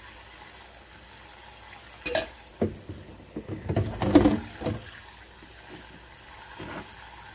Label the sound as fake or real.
real